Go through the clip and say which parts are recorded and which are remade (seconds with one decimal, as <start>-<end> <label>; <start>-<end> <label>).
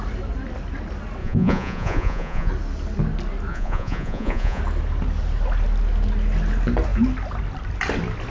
0.0-1.2 recorded; 1.2-2.5 remade; 2.5-3.5 recorded; 3.5-4.6 remade; 4.6-8.3 recorded